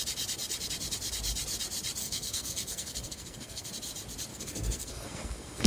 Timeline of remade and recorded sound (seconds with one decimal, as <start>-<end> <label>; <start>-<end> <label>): 0.0-2.0 recorded; 2.0-3.7 remade; 3.7-4.3 recorded; 4.3-5.7 remade